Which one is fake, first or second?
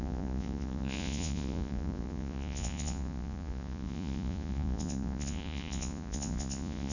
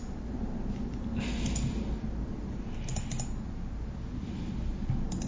first